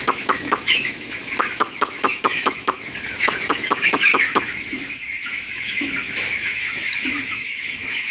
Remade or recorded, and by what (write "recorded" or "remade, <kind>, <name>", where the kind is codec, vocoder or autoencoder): remade, autoencoder, DAC-VAE